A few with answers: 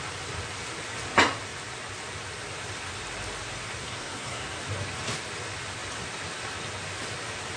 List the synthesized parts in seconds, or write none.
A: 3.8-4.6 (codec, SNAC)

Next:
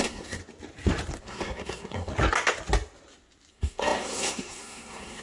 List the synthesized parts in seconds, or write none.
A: 0.0-0.4 (codec, SNAC); 1.2-2.1; 3.5-5.2

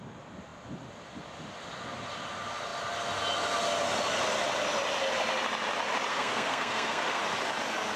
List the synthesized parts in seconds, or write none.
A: 6.1-7.2 (codec, SNAC)

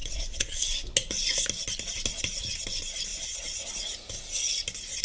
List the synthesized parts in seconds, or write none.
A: 0.0-0.6 (vocoder, WaveNeXt); 3.1-3.7

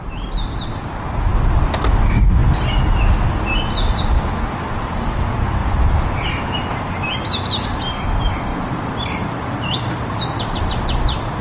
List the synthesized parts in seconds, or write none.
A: 8.5-10.1 (vocoder, BigVGAN v2)

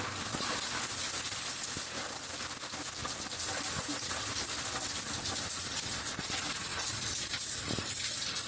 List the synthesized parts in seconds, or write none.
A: none

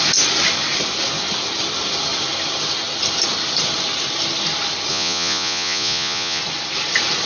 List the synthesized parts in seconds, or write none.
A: 4.9-6.4 (vocoder, Vocos)